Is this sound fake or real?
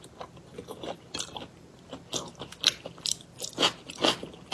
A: real